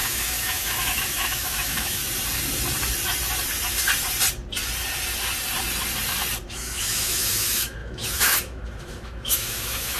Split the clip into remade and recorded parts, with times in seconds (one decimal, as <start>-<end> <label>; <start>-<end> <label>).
0.0-2.0 remade; 2.0-6.5 recorded; 6.5-10.0 remade